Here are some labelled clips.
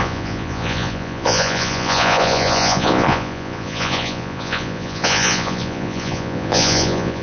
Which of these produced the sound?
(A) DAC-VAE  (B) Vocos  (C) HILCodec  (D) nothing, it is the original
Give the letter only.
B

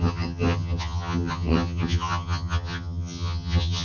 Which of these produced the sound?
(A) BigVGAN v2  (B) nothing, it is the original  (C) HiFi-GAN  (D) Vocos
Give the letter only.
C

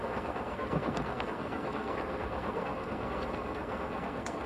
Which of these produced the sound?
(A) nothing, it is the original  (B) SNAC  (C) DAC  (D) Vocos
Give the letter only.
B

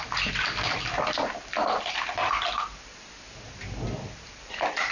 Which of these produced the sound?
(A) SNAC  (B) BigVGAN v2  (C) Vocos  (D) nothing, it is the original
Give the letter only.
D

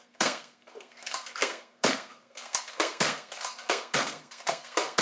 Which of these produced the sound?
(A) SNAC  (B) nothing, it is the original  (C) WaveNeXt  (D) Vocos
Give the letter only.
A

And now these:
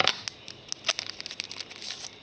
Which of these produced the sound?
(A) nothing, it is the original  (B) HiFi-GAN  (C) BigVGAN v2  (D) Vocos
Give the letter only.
A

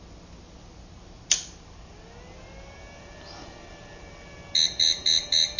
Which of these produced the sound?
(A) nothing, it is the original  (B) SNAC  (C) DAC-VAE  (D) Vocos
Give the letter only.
A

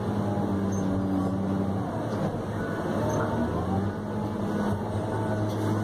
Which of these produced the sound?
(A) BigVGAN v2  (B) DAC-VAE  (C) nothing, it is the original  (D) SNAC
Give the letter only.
C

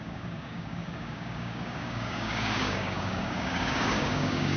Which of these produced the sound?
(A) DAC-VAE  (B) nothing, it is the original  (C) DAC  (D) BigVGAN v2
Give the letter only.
C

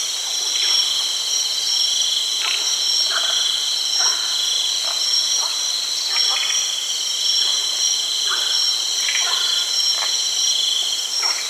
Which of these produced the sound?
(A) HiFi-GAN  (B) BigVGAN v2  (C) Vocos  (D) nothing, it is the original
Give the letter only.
D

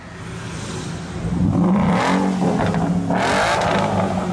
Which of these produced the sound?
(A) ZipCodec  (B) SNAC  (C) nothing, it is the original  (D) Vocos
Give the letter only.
C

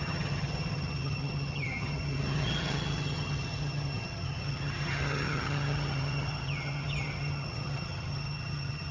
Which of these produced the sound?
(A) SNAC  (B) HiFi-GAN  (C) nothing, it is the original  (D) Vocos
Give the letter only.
B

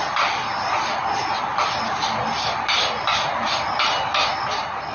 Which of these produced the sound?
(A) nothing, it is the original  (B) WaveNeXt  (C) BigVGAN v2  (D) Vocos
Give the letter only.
A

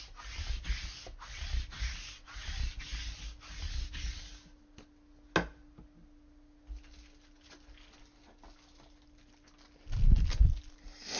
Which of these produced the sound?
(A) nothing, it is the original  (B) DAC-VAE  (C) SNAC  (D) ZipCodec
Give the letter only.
A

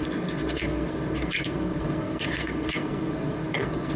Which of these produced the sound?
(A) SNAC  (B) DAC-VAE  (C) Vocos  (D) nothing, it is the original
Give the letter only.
A